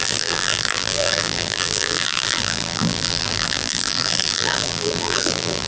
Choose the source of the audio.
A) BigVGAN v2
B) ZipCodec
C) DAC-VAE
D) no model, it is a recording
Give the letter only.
A